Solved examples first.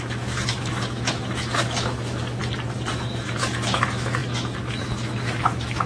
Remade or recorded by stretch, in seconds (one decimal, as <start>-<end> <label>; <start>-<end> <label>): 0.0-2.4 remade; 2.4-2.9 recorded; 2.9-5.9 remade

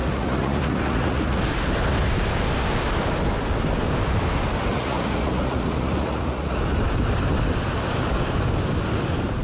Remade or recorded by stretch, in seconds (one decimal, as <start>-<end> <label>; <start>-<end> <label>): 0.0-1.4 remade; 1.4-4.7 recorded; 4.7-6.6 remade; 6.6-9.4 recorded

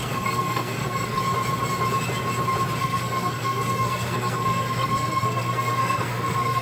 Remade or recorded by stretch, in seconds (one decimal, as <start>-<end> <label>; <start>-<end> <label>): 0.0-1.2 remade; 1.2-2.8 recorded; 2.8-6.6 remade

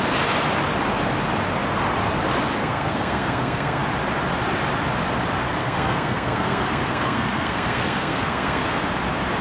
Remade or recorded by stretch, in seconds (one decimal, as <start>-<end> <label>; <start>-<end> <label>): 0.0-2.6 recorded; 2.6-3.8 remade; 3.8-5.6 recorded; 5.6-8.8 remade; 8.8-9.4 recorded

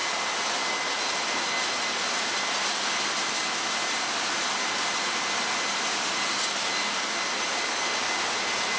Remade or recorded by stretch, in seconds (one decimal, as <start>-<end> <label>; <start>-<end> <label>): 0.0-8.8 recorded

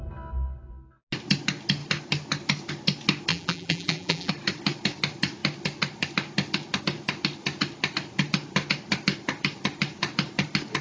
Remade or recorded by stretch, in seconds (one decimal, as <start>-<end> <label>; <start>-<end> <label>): 0.0-3.3 recorded; 3.3-4.3 remade; 4.3-10.8 recorded